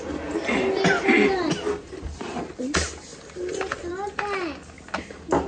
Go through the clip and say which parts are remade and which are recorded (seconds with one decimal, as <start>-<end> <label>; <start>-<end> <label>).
0.0-5.5 recorded